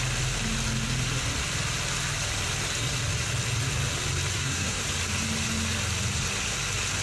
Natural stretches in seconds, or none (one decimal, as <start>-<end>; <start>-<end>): 0.0-4.3; 4.8-7.0